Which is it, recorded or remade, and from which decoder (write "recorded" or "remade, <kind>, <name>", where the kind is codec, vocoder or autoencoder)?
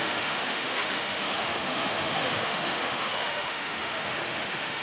remade, autoencoder, DAC-VAE